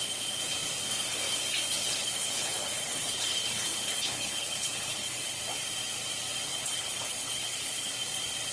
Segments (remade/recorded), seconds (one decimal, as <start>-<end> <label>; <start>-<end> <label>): 0.0-1.8 recorded; 1.8-5.4 remade; 5.4-6.5 recorded; 6.5-7.9 remade; 7.9-8.5 recorded